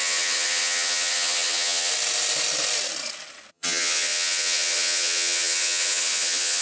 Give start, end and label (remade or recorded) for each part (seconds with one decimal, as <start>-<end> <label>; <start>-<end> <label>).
0.0-1.9 remade; 1.9-3.5 recorded; 3.5-6.6 remade